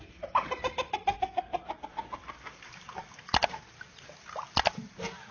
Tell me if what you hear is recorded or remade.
recorded